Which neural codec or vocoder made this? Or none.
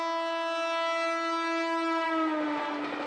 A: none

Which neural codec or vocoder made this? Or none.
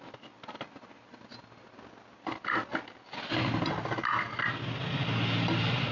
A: none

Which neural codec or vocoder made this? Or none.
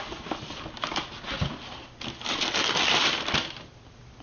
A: none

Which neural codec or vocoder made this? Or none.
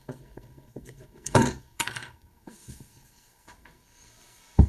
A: codec, SNAC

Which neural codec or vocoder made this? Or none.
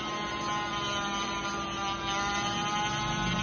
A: none